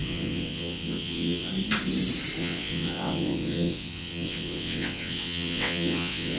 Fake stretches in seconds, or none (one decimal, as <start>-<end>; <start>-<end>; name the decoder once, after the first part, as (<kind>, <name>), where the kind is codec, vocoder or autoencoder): 0.0-1.5 (vocoder, WaveNeXt); 2.4-6.4